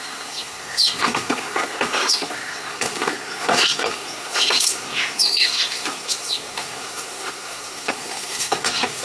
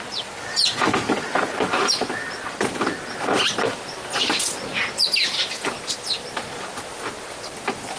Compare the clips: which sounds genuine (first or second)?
second